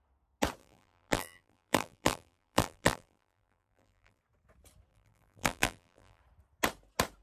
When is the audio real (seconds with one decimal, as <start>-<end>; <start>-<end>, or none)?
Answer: 0.0-0.6; 4.2-4.9; 6.2-7.2